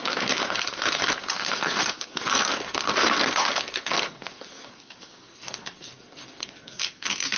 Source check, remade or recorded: remade